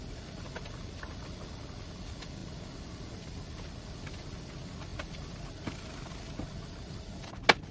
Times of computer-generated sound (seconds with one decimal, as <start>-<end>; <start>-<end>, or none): none